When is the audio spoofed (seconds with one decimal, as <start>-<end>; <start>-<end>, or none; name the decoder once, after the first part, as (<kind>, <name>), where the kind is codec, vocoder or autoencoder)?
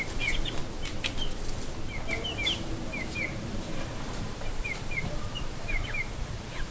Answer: 0.0-0.6 (vocoder, BigVGAN v2); 2.1-6.7